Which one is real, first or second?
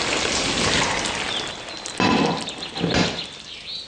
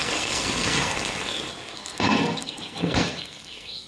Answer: first